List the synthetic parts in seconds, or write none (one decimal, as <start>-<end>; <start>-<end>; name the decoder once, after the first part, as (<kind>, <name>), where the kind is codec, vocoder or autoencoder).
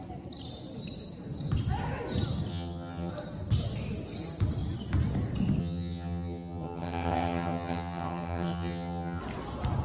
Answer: 2.5-3.1 (vocoder, HiFi-GAN); 5.6-9.2